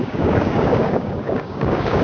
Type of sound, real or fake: fake